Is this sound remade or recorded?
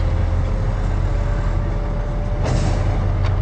recorded